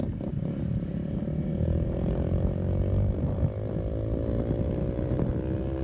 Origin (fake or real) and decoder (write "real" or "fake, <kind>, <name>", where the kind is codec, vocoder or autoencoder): real